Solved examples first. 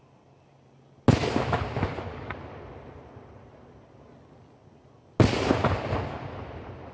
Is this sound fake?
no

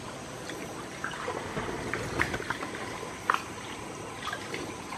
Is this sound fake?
no